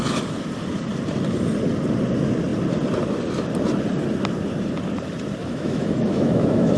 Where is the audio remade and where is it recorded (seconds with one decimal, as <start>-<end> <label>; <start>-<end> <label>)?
0.0-5.4 recorded; 5.4-6.8 remade